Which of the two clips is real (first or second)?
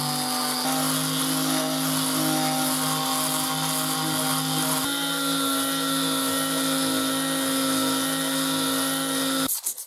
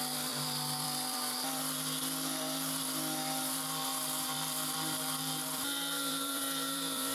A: first